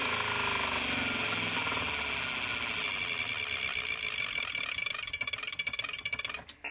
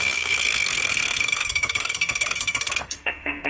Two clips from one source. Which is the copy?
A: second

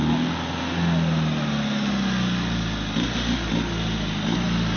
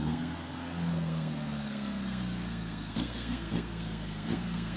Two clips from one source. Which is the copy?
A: second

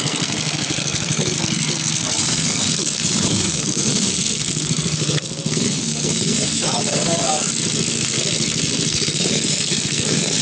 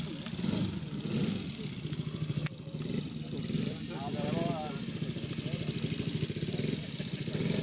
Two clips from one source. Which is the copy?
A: first